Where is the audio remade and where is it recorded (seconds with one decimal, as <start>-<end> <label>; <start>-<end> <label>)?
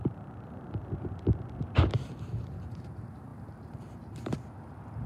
0.0-0.8 remade; 0.8-1.6 recorded; 1.6-5.1 remade